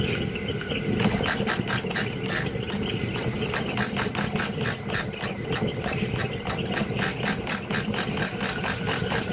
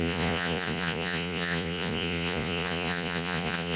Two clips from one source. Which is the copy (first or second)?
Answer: second